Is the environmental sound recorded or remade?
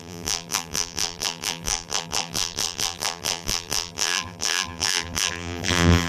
remade